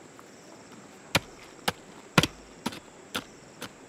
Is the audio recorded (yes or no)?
yes